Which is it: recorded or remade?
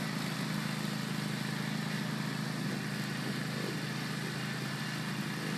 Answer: recorded